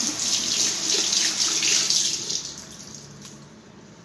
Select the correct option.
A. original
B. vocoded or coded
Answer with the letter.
A